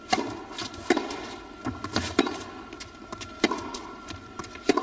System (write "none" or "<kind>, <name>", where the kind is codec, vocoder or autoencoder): none